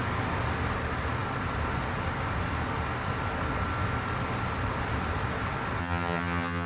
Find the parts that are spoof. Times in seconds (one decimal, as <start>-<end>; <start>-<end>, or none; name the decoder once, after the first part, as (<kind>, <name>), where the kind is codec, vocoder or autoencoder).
5.8-6.7 (vocoder, HiFi-GAN)